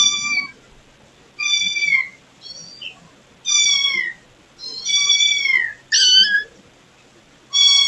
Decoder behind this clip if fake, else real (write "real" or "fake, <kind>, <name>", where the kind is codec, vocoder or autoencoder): real